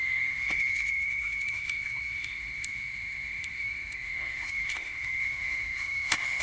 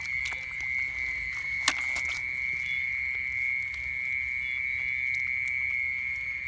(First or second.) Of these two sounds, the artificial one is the first